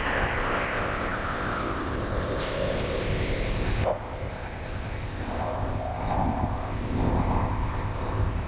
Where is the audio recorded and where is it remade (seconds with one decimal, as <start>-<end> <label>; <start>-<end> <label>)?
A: 0.0-8.5 remade